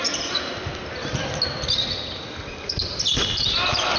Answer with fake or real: real